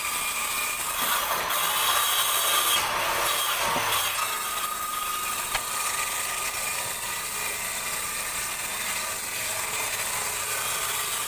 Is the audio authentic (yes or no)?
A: yes